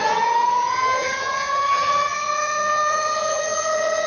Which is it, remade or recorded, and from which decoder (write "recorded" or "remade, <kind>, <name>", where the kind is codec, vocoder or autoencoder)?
remade, vocoder, HiFi-GAN